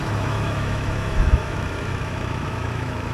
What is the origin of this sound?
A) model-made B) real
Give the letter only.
A